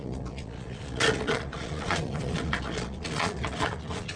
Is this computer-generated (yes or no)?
yes